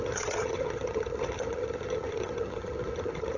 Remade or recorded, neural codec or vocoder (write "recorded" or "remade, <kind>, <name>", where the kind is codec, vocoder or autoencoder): remade, vocoder, HiFi-GAN